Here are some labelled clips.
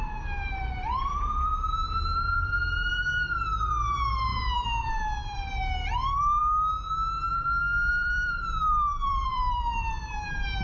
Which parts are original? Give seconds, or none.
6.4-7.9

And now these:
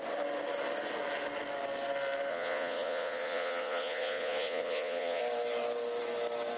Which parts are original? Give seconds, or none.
0.0-2.3; 5.2-6.6

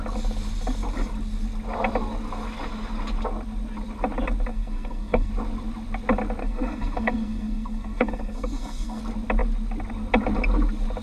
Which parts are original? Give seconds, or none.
0.0-4.5; 5.3-6.4; 9.0-11.0

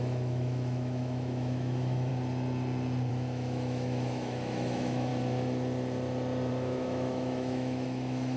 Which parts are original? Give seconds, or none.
2.1-3.1; 5.1-6.5

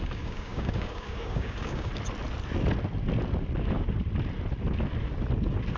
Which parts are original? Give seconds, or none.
1.9-5.8